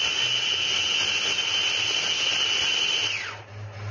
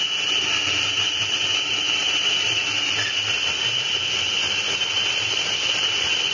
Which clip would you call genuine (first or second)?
first